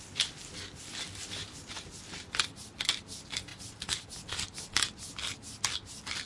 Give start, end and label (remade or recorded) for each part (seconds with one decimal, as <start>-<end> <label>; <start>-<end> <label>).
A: 0.0-6.3 recorded